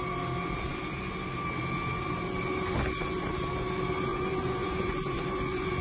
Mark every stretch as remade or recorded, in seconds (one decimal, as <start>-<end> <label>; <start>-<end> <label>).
0.0-4.1 recorded; 4.1-5.8 remade